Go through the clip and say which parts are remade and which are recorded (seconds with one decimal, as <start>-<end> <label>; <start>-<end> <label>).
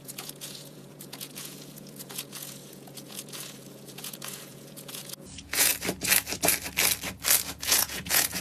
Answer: 0.0-5.7 remade; 5.7-7.5 recorded; 7.5-8.4 remade